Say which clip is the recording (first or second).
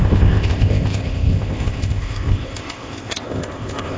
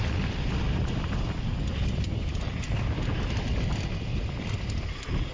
second